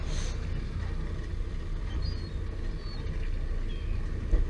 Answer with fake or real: real